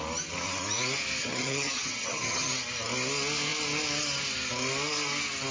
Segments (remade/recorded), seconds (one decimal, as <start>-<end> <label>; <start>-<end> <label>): 0.0-1.2 recorded; 1.2-2.5 remade; 2.5-5.5 recorded